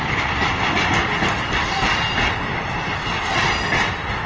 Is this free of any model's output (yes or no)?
yes